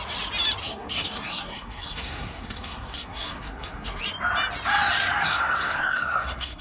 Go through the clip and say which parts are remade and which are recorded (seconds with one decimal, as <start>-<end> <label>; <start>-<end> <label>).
0.0-0.6 recorded; 0.6-4.0 remade; 4.0-5.2 recorded; 5.2-6.6 remade